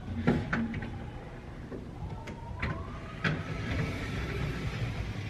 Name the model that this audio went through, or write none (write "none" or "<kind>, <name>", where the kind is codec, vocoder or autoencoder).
none